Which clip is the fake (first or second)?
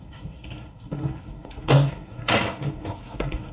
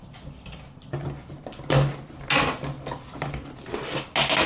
first